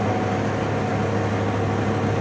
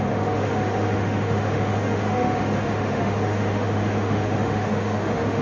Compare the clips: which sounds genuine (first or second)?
first